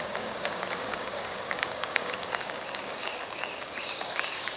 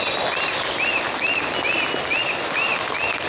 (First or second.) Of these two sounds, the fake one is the first